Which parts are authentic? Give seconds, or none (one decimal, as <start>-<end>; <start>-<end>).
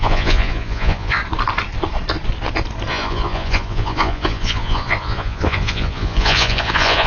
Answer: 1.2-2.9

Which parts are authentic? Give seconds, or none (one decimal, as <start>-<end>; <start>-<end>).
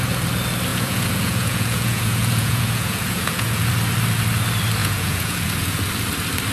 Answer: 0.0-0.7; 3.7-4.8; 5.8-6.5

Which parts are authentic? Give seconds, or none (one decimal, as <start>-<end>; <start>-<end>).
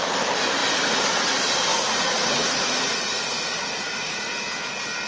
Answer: 0.0-1.7; 4.3-5.1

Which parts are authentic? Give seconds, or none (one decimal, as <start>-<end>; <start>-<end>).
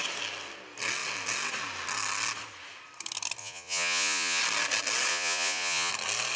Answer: 0.0-3.4; 4.4-5.1; 5.9-6.4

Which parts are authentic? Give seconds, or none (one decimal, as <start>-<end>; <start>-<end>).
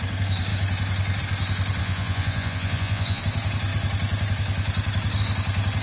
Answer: 0.0-1.8; 3.2-5.8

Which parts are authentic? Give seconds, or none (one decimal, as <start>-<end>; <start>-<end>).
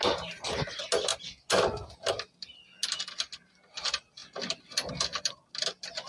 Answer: 0.0-6.1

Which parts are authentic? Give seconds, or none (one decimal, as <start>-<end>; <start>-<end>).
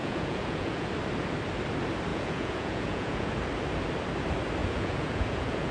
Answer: 0.9-2.1; 3.3-4.6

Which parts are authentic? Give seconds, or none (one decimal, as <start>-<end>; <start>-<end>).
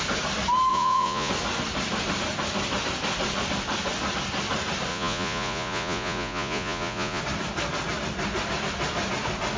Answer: 0.0-0.7; 1.3-4.9; 7.2-9.6